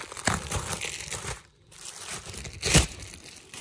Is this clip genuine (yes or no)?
no